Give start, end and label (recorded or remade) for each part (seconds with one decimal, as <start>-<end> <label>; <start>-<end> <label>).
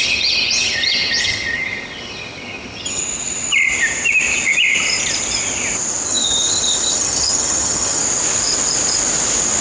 0.0-3.0 remade; 3.0-6.1 recorded; 6.1-8.0 remade; 8.0-9.6 recorded